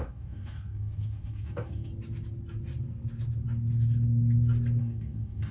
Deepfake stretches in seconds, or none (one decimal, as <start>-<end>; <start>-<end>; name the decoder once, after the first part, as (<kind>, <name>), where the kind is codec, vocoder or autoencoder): 0.0-1.9 (codec, DAC); 4.8-5.5